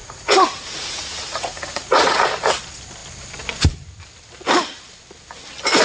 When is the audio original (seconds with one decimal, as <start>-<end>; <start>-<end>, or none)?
2.2-5.8